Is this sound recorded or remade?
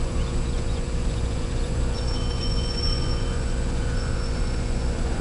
remade